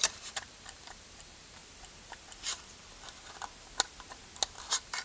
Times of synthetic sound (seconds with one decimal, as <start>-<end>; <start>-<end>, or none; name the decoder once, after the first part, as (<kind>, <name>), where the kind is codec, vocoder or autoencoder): 0.0-1.6 (vocoder, BigVGAN v2); 4.6-5.0